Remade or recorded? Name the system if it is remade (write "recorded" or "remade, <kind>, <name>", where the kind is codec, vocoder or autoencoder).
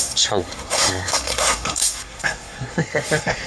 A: remade, codec, SNAC